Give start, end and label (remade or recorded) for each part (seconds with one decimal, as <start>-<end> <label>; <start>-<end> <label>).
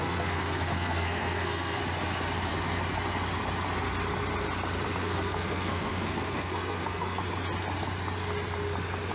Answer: 0.0-1.8 remade; 1.8-5.0 recorded; 5.0-7.2 remade; 7.2-9.1 recorded